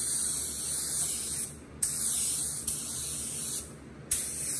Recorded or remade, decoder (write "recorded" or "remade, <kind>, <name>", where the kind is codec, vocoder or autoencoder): recorded